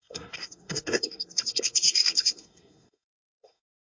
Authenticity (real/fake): fake